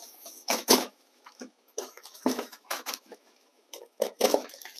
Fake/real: fake